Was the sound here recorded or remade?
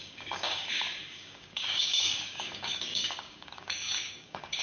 remade